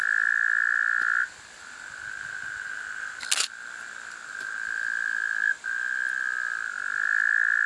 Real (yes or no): yes